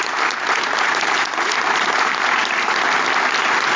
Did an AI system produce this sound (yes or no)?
no